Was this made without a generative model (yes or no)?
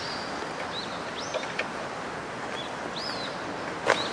yes